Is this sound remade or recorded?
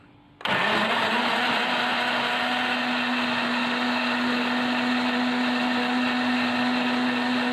recorded